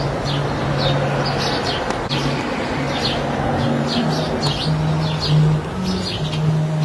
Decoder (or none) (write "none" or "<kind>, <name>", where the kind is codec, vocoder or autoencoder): none